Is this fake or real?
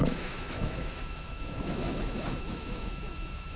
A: fake